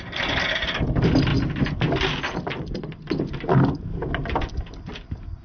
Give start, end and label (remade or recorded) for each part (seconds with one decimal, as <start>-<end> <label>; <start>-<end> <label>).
0.0-5.4 recorded